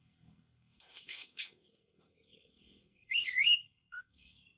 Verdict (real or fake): fake